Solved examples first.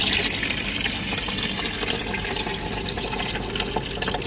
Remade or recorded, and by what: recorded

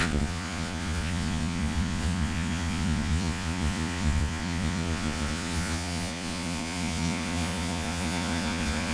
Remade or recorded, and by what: remade, vocoder, Vocos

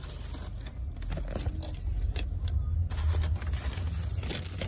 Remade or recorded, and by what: recorded